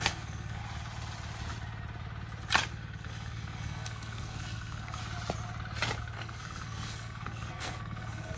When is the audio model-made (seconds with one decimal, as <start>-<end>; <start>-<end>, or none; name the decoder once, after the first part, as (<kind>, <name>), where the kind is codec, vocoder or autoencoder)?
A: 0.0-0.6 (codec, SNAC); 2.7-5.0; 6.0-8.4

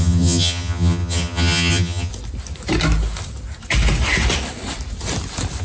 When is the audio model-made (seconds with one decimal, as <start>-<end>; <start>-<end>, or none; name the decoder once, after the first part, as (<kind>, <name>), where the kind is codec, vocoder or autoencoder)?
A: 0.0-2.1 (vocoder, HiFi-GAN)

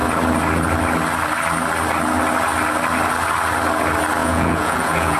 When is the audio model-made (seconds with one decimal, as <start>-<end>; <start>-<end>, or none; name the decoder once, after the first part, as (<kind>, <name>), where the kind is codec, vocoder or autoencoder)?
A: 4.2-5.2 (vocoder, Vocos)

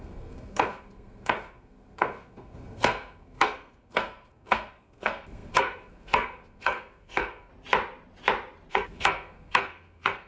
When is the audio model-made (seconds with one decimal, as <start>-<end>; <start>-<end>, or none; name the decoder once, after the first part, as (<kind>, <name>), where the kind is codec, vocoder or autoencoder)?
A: 0.0-7.5 (codec, SNAC); 8.7-10.3

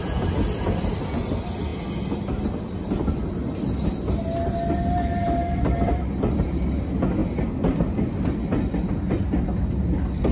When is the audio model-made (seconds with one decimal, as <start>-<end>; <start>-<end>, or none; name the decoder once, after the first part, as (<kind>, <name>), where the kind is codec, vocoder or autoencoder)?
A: none

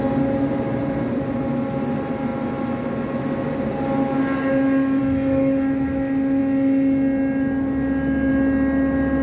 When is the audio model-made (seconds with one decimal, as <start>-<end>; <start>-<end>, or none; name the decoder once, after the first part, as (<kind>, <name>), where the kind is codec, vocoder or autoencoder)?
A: none

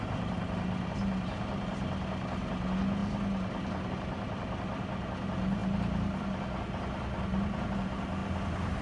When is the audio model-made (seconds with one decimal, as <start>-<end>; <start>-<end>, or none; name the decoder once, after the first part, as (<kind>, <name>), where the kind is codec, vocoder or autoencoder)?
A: 8.2-8.8 (vocoder, BigVGAN v2)

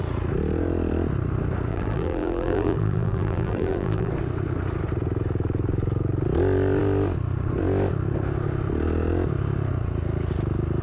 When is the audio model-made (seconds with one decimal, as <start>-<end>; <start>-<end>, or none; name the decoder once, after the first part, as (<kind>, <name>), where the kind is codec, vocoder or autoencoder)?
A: 1.7-4.1 (vocoder, BigVGAN v2)